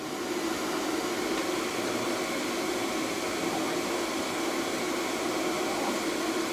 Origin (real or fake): real